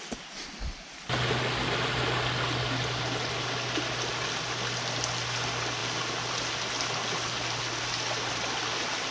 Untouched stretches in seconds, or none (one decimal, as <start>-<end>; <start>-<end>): 0.0-9.1